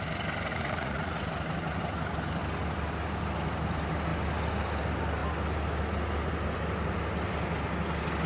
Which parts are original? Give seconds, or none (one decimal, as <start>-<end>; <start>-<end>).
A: 0.0-0.5; 1.2-8.3